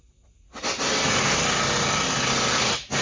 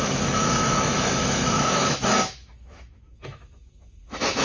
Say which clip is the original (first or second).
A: first